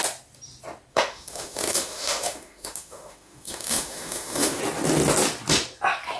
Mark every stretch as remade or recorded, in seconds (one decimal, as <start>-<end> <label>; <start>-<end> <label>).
0.0-0.9 recorded; 0.9-4.6 remade; 4.6-6.2 recorded